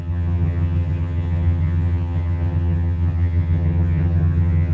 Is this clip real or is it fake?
fake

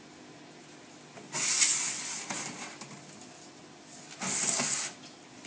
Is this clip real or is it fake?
real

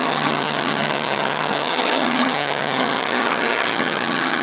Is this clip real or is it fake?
fake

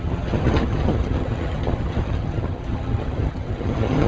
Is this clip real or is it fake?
fake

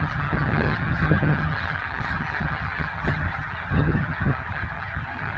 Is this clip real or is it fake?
fake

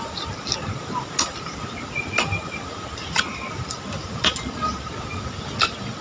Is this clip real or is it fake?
real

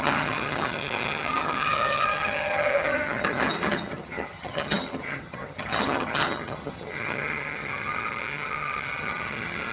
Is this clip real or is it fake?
fake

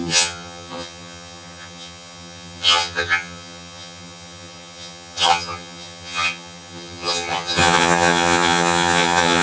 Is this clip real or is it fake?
fake